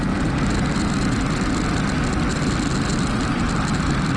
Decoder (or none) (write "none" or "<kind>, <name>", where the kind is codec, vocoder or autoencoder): none